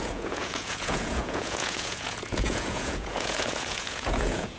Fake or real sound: fake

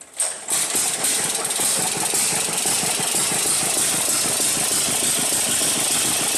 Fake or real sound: real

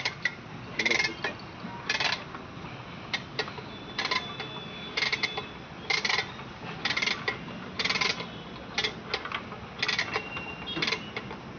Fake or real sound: real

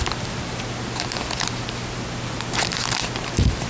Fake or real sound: real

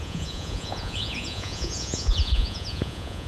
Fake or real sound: fake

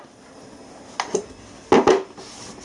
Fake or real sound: real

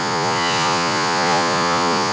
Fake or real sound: fake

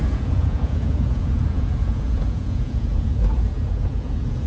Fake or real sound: fake